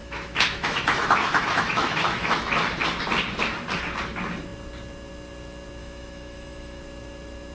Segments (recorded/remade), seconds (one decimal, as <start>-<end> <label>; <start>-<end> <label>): 0.0-2.5 remade; 2.5-5.8 recorded; 5.8-6.8 remade; 6.8-7.5 recorded